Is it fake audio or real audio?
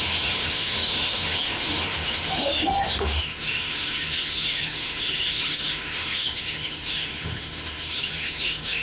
fake